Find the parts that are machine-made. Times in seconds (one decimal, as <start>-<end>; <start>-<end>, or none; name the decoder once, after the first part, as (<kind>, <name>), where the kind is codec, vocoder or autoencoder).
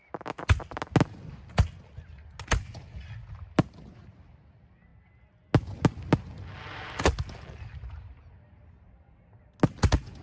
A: none